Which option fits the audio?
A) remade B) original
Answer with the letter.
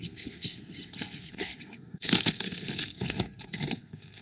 A